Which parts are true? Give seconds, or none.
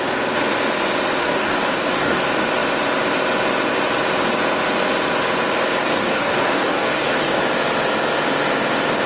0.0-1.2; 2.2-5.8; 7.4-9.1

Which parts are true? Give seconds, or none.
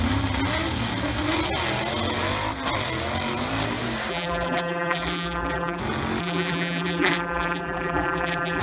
0.0-4.1; 5.8-6.2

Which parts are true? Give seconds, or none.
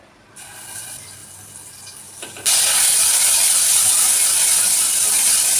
0.0-5.6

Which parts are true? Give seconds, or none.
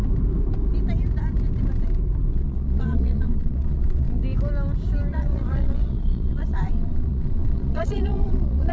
0.0-2.3; 4.2-5.1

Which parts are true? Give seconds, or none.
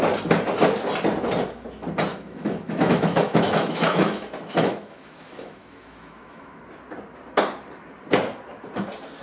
0.0-2.1; 6.6-9.2